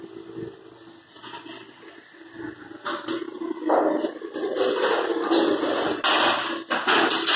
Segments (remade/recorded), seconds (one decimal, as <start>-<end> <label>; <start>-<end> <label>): 0.0-7.4 recorded

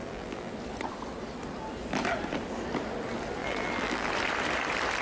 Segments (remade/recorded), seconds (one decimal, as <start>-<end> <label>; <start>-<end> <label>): 0.0-0.5 remade; 0.5-3.4 recorded; 3.4-4.1 remade; 4.1-5.0 recorded

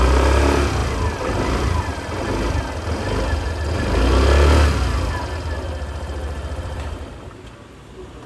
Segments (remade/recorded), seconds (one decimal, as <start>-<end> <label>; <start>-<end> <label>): 0.0-0.8 recorded; 0.8-2.6 remade; 2.6-6.2 recorded; 6.2-6.9 remade; 6.9-8.3 recorded

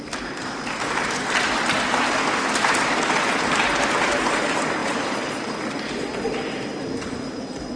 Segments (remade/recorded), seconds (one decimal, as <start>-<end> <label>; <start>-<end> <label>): 0.0-4.8 recorded; 4.8-5.4 remade; 5.4-7.8 recorded

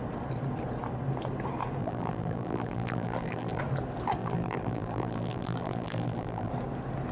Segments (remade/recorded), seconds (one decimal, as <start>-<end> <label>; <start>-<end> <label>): 0.0-1.8 recorded; 1.8-3.6 remade; 3.6-4.2 recorded; 4.2-6.5 remade; 6.5-7.1 recorded

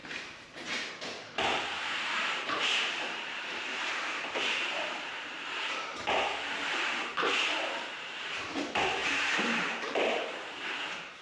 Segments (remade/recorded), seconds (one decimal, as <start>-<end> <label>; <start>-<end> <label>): 0.0-5.9 remade; 5.9-7.4 recorded; 7.4-11.2 remade